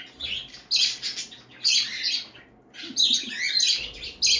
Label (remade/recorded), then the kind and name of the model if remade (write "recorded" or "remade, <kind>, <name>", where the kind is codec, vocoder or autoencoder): recorded